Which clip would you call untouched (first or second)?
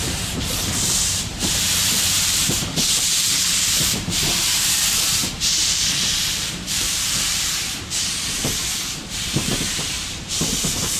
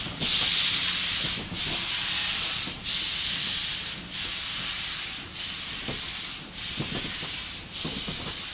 second